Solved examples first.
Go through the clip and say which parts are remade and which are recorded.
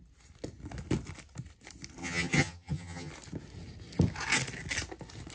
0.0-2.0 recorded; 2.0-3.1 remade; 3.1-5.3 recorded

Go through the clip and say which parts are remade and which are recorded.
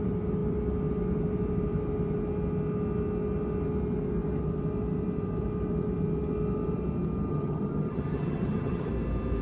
0.0-7.3 recorded; 7.3-8.9 remade; 8.9-9.4 recorded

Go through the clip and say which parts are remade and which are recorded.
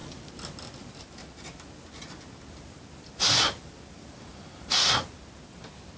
0.0-6.0 recorded